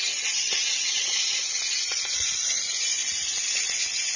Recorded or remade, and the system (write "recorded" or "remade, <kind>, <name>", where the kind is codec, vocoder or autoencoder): remade, vocoder, Vocos